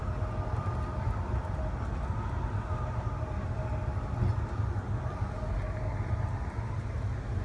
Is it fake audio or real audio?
real